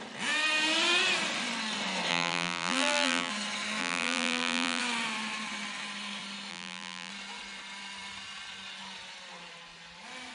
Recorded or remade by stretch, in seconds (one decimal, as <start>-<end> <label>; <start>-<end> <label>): 0.0-2.1 recorded; 2.1-3.3 remade; 3.3-3.8 recorded; 3.8-4.8 remade; 4.8-6.5 recorded; 6.5-7.1 remade; 7.1-10.3 recorded